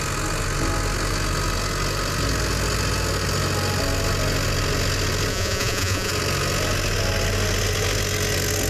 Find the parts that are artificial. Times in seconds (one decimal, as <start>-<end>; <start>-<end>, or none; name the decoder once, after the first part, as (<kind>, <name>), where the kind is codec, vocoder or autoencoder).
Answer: 5.3-6.1 (vocoder, Vocos)